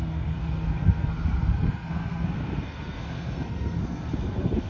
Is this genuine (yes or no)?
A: no